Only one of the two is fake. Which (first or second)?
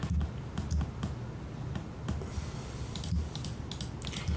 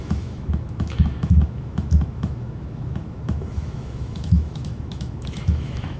second